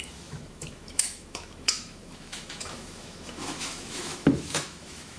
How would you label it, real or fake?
fake